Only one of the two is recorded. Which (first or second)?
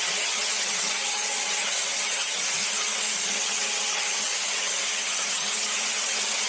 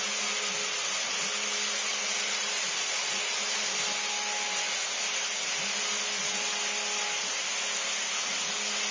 second